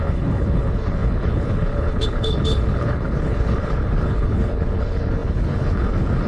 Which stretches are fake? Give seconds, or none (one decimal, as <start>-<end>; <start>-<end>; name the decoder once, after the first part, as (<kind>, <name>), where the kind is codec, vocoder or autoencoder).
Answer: 0.0-6.3 (codec, HILCodec)